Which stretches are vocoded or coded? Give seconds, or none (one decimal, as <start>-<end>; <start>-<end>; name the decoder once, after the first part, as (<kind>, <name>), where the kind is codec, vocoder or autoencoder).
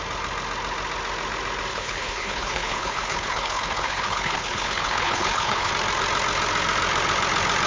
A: 1.7-5.7 (codec, HILCodec)